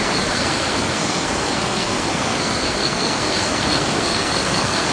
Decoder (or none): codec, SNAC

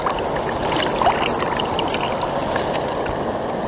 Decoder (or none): none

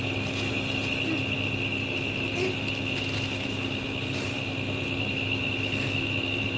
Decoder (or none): none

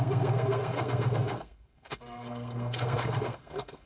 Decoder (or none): codec, SNAC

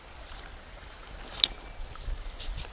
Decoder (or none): none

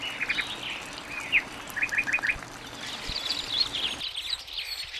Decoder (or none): none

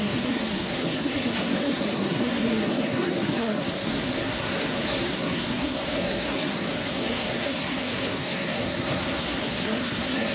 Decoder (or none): codec, SNAC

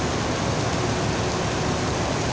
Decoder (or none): none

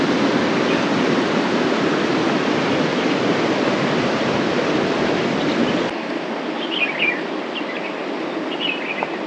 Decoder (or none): none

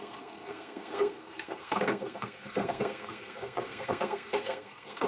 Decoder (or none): codec, SNAC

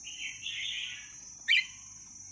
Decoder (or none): none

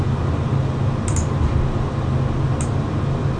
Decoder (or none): none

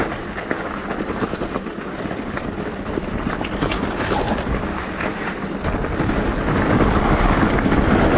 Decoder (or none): none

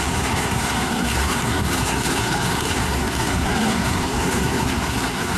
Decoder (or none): codec, SNAC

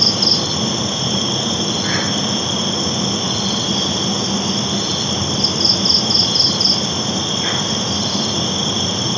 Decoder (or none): none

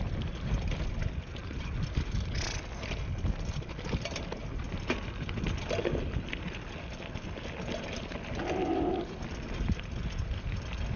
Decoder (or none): none